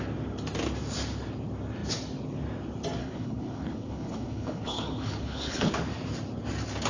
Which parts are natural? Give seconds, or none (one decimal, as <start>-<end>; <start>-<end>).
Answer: 0.0-3.0; 5.7-6.9